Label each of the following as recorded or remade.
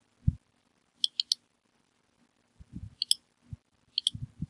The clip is recorded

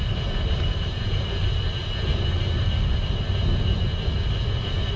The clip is recorded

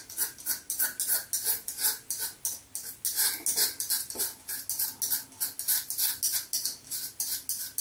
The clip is recorded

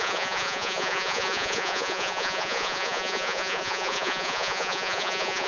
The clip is remade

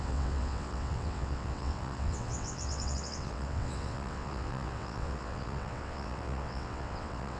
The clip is remade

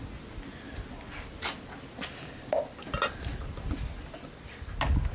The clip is recorded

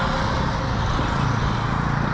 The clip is recorded